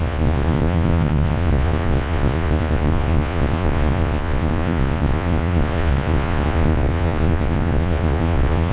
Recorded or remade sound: remade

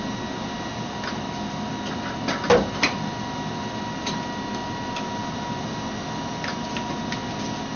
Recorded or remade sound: recorded